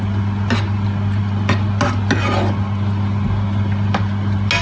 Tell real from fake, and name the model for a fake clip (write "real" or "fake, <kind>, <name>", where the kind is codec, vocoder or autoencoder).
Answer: real